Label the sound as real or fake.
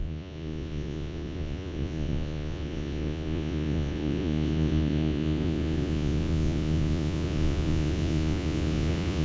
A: fake